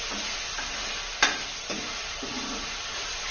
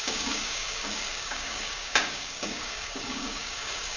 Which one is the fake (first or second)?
second